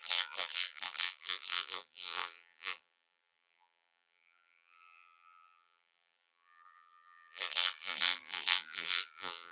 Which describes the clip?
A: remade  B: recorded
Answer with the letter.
A